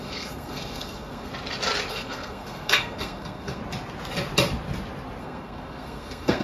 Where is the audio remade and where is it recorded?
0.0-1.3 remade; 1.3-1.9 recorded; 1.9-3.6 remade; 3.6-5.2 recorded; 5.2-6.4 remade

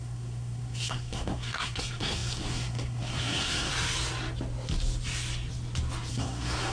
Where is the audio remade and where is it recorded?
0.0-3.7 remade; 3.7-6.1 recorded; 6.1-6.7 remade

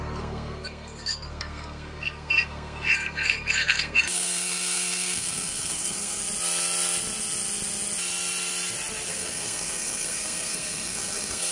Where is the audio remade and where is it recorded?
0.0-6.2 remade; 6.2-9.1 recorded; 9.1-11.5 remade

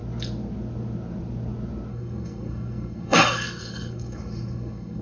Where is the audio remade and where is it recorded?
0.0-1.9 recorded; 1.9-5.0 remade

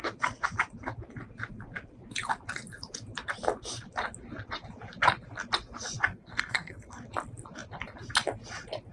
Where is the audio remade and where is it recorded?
0.0-6.1 recorded; 6.1-7.0 remade; 7.0-8.9 recorded

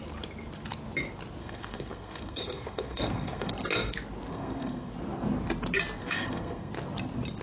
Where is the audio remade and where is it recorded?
0.0-1.4 recorded; 1.4-3.5 remade; 3.5-4.3 recorded; 4.3-4.9 remade; 4.9-6.0 recorded; 6.0-6.7 remade; 6.7-7.4 recorded

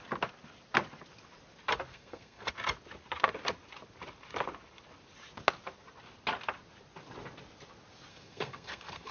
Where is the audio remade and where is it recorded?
0.0-1.9 recorded; 1.9-2.5 remade; 2.5-8.1 recorded; 8.1-9.1 remade

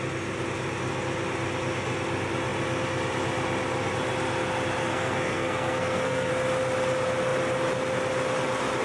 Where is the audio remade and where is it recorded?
0.0-4.8 recorded; 4.8-6.3 remade; 6.3-8.8 recorded